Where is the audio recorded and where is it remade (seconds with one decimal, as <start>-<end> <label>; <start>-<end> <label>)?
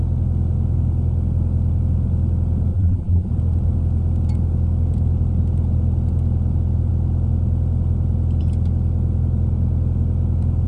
0.0-2.7 recorded; 2.7-3.3 remade; 3.3-10.7 recorded